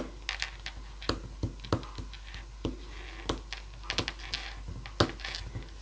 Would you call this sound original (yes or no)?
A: yes